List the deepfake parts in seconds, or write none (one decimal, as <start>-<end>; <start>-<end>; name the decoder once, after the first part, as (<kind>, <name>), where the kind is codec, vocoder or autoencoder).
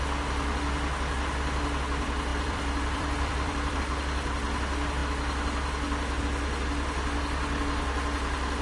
2.3-3.8 (vocoder, BigVGAN v2)